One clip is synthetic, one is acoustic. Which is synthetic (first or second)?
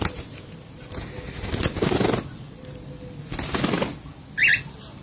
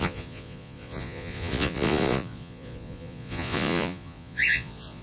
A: second